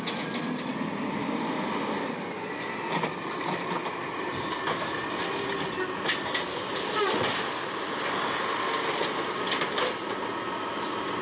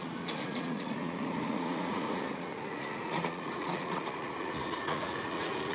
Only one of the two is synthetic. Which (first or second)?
second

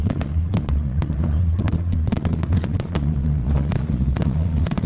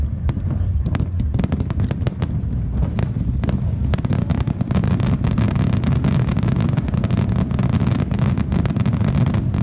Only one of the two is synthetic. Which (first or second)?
first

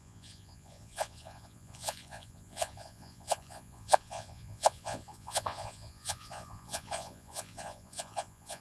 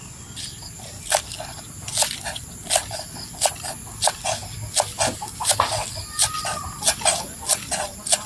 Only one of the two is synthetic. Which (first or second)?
first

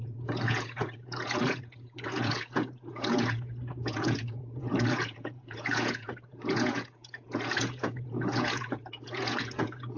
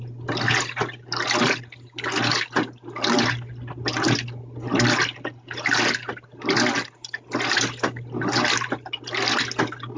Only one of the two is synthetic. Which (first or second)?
first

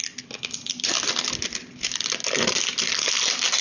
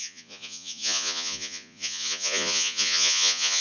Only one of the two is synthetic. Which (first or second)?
second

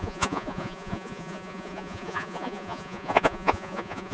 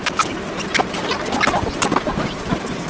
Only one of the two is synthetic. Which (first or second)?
first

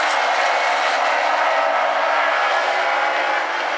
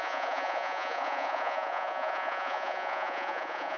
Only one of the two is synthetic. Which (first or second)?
second